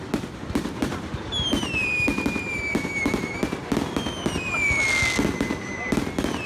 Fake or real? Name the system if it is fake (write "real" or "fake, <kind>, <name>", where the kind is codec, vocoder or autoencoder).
real